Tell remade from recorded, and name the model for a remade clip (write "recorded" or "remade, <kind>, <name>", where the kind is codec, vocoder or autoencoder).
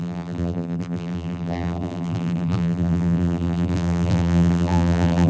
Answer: remade, vocoder, BigVGAN v2